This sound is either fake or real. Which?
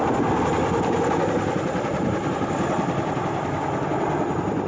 real